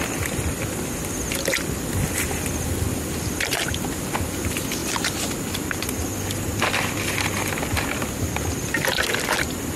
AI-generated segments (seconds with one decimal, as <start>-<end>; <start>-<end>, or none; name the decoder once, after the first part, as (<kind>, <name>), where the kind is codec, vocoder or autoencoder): none